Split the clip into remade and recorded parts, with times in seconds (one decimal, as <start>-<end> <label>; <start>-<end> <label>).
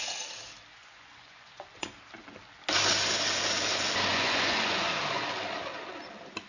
0.0-0.7 recorded; 0.7-1.9 remade; 1.9-4.1 recorded; 4.1-5.0 remade; 5.0-6.5 recorded